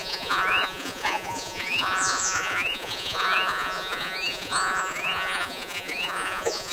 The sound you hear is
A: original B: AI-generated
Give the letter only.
B